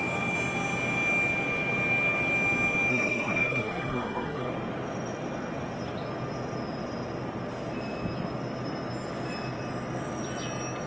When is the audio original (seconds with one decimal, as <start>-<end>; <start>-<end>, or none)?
0.0-2.9; 4.5-10.9